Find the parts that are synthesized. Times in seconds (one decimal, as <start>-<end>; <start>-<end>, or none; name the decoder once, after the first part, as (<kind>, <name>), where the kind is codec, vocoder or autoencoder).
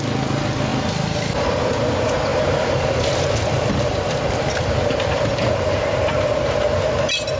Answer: 0.7-1.9 (vocoder, BigVGAN v2); 2.3-6.5